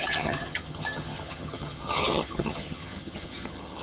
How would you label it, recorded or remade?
remade